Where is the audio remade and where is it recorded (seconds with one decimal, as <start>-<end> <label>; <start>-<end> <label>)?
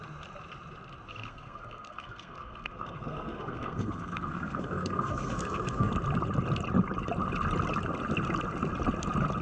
0.0-1.1 recorded; 1.1-5.9 remade; 5.9-9.4 recorded